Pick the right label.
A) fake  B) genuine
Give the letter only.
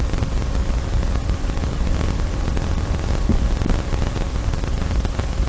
B